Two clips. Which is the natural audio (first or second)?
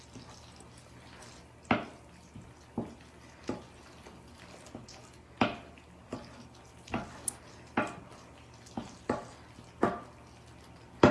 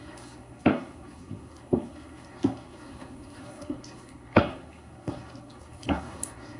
first